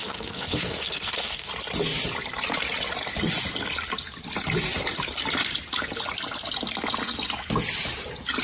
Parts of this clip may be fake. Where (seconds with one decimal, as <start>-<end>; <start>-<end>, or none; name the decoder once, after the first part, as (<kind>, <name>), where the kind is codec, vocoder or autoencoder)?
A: 0.0-1.5 (codec, SNAC)